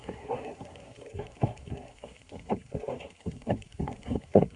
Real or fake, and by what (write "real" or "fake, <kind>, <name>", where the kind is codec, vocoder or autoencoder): fake, codec, SNAC